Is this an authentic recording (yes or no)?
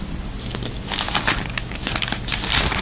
yes